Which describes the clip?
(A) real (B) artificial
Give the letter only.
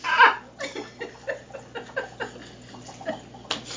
A